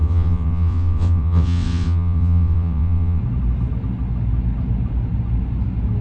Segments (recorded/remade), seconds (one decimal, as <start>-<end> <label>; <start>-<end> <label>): 0.0-3.2 remade; 3.2-6.0 recorded